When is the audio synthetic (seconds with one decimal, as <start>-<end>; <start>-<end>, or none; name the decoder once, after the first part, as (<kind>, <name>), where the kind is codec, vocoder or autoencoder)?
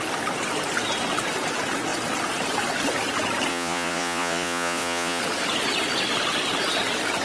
3.5-5.2 (vocoder, Vocos)